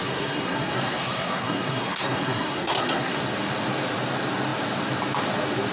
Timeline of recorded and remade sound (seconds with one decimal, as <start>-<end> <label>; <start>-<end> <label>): 0.0-3.2 remade; 3.2-5.7 recorded